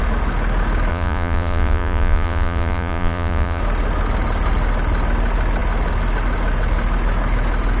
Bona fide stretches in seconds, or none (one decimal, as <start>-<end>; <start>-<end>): 0.0-0.9; 3.6-7.8